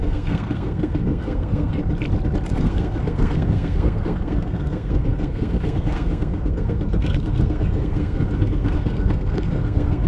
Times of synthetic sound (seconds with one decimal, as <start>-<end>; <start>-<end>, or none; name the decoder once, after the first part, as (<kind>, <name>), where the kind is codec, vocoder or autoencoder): 0.0-1.8 (codec, SNAC); 2.5-10.1